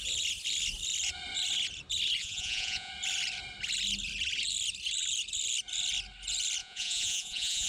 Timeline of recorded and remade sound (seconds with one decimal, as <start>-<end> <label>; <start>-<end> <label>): 0.0-2.2 recorded; 2.2-2.9 remade; 2.9-6.6 recorded; 6.6-7.7 remade